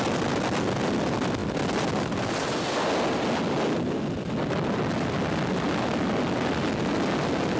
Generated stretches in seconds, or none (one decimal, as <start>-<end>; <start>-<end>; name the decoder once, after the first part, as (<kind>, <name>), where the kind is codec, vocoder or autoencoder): none